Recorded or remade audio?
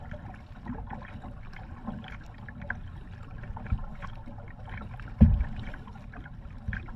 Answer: remade